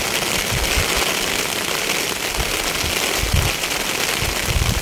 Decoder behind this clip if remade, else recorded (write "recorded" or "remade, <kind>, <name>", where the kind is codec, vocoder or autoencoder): recorded